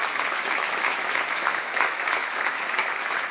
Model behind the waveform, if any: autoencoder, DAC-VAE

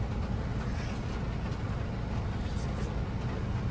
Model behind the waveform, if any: none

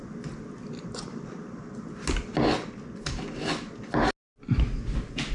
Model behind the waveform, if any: none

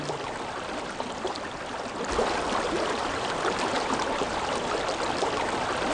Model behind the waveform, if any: vocoder, BigVGAN v2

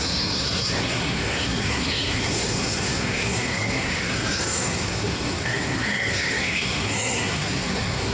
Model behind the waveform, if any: codec, SNAC